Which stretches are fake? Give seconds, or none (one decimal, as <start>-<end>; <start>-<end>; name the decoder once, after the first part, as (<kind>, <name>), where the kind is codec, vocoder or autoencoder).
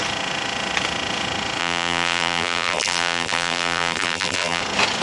1.6-4.6 (vocoder, BigVGAN v2)